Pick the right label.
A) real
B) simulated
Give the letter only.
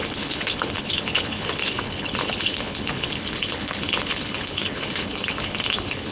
B